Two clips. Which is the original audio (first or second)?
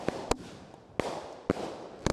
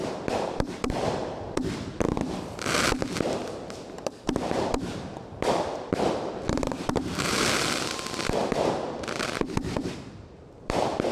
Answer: first